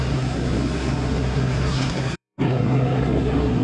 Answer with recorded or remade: remade